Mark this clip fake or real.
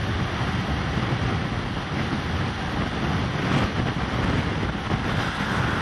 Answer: real